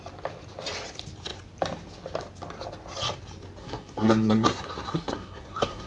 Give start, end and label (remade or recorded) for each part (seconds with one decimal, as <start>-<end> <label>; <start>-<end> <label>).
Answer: 0.0-3.6 recorded; 3.6-5.9 remade